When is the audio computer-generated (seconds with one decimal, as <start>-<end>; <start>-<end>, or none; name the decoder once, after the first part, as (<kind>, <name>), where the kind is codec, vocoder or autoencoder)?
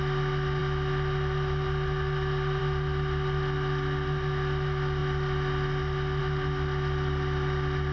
none